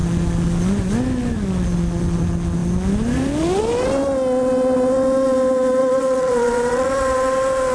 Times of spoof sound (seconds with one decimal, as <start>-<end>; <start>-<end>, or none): 5.8-6.9